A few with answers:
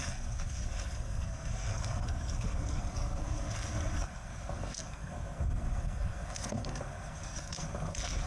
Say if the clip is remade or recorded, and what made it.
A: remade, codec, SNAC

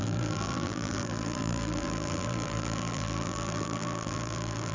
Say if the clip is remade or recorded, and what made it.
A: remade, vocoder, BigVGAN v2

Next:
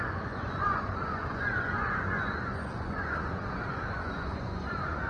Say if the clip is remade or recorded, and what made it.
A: remade, vocoder, Vocos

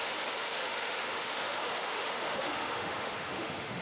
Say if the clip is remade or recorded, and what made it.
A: remade, autoencoder, DAC-VAE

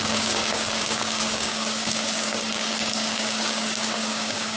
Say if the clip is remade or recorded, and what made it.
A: remade, codec, DAC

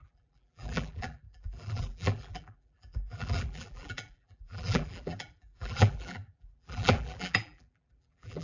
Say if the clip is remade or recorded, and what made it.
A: remade, vocoder, BigVGAN v2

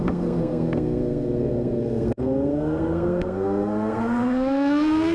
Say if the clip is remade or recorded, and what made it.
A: remade, codec, SNAC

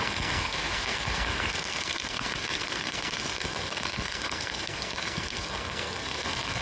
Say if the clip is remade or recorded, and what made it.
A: remade, codec, SNAC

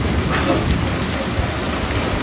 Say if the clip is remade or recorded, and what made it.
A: recorded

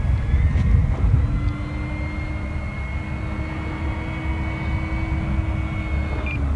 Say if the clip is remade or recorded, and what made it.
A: recorded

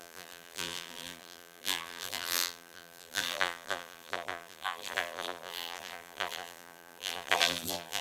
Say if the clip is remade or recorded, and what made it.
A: remade, vocoder, BigVGAN v2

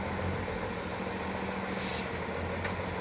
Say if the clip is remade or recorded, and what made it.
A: recorded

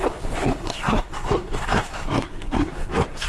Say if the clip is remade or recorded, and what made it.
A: remade, codec, SNAC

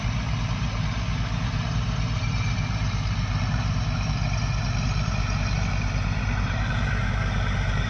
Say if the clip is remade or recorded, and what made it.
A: remade, vocoder, BigVGAN v2